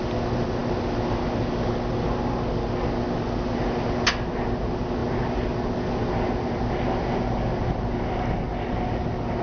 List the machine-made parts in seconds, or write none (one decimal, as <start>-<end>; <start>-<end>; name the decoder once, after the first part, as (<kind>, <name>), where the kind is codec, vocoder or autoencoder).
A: none